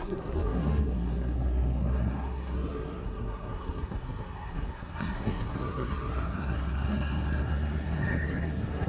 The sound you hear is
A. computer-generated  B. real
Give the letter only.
A